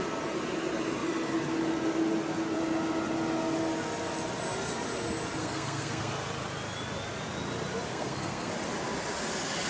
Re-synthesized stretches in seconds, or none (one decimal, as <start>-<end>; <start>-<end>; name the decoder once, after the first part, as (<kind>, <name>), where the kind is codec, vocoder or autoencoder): 5.4-6.1 (codec, SNAC); 7.9-8.5